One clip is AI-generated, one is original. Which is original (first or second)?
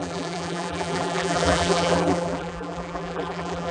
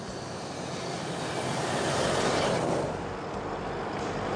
second